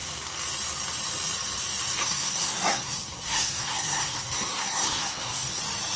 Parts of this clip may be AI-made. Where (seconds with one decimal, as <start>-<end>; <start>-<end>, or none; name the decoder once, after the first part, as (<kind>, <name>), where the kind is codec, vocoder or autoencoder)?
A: 2.0-5.6 (codec, SNAC)